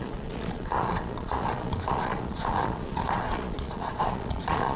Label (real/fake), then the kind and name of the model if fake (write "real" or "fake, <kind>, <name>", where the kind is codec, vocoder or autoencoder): fake, vocoder, Vocos